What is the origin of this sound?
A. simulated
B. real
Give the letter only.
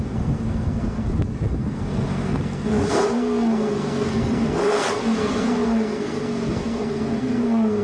A